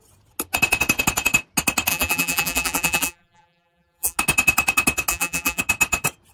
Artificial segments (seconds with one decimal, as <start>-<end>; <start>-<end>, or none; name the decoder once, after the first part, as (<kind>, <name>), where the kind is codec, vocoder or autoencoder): 1.9-4.2 (vocoder, BigVGAN v2); 5.1-5.6